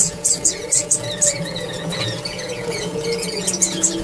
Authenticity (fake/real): fake